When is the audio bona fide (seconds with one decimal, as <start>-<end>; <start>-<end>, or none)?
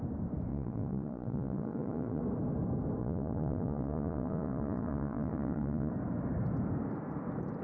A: 0.0-0.5; 2.2-3.0; 5.9-7.6